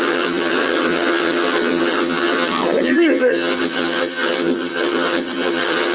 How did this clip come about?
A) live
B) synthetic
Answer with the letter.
B